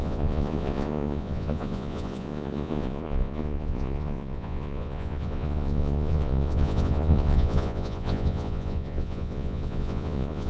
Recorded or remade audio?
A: remade